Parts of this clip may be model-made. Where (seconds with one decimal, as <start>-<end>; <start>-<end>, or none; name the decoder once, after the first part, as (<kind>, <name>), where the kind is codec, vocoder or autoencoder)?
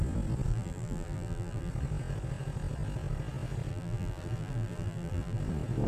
0.5-1.7 (vocoder, BigVGAN v2); 3.7-5.4